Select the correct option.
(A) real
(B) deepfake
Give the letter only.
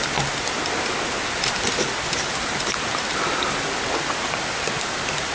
A